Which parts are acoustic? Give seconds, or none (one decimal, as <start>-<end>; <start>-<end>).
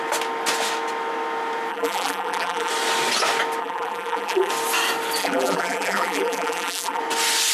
0.0-1.7; 2.7-3.6; 4.5-5.2; 7.0-7.5